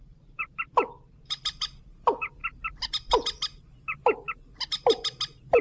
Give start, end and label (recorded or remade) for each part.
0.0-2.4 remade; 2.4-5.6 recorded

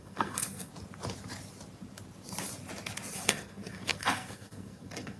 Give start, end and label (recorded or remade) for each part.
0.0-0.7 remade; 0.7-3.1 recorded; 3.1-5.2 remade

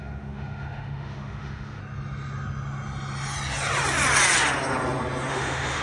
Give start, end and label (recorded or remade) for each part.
0.0-1.8 remade; 1.8-5.3 recorded; 5.3-5.8 remade